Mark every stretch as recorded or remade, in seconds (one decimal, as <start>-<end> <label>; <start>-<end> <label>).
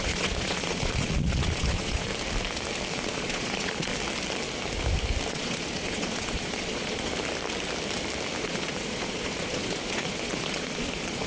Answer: 0.0-2.1 remade; 2.1-2.9 recorded; 2.9-3.9 remade; 3.9-5.3 recorded; 5.3-7.1 remade; 7.1-8.4 recorded; 8.4-11.3 remade